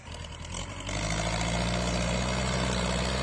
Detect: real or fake real